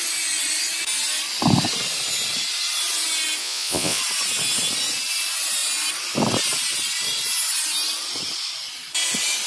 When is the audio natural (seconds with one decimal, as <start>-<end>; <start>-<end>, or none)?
0.0-3.4; 4.0-9.5